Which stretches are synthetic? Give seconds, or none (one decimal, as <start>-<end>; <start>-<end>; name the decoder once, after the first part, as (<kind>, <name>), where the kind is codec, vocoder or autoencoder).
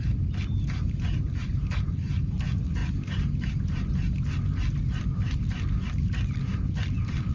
none